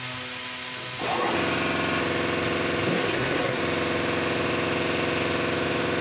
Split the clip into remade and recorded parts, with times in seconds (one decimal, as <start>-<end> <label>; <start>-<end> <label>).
0.0-2.9 recorded; 2.9-3.6 remade; 3.6-6.0 recorded

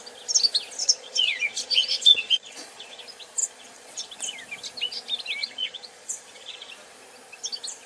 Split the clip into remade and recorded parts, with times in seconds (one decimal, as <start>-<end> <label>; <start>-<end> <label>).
0.0-0.8 recorded; 0.8-3.0 remade; 3.0-3.4 recorded; 3.4-4.1 remade; 4.1-5.4 recorded; 5.4-6.7 remade; 6.7-7.9 recorded

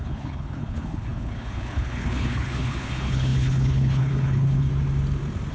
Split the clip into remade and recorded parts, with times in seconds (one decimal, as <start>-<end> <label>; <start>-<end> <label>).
0.0-4.7 remade; 4.7-5.5 recorded

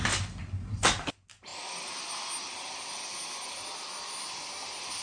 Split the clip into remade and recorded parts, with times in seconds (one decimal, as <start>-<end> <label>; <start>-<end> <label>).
0.0-5.0 recorded

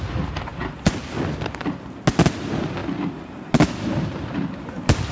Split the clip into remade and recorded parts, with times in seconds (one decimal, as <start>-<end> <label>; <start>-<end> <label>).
0.0-5.1 recorded